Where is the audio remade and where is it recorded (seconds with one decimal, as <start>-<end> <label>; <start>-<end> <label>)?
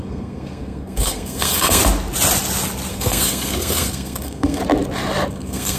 0.0-1.8 remade; 1.8-2.9 recorded; 2.9-4.6 remade; 4.6-5.3 recorded; 5.3-5.8 remade